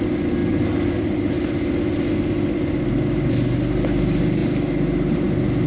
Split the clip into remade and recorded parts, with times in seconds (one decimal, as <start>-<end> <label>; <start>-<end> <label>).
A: 0.0-5.7 recorded